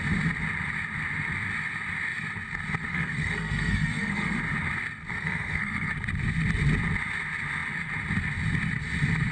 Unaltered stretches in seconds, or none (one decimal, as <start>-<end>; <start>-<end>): 0.0-2.9; 4.4-5.1; 5.9-9.3